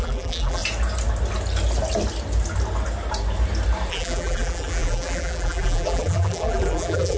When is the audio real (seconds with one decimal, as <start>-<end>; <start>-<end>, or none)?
0.6-3.9